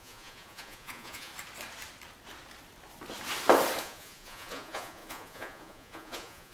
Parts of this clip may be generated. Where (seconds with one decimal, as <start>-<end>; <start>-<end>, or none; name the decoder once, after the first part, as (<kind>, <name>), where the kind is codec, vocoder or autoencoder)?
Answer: 0.0-1.3 (vocoder, Vocos); 3.8-6.5